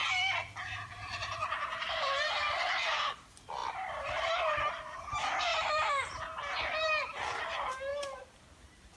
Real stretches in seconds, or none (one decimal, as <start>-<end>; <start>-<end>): 2.2-3.6; 4.7-5.5; 6.2-7.9; 8.4-9.0